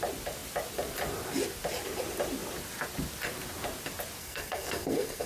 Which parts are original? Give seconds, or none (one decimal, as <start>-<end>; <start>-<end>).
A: 0.0-4.2